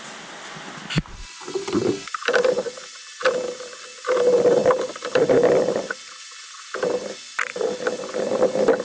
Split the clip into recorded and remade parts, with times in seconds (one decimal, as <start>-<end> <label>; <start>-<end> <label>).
0.0-8.8 recorded